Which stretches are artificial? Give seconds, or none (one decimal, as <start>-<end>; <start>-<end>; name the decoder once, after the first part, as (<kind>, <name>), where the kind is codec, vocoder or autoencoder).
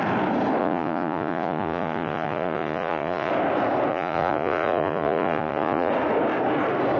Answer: 0.6-3.3 (vocoder, Vocos); 3.9-5.9